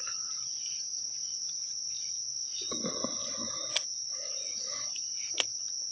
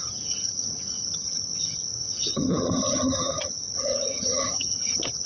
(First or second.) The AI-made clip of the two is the second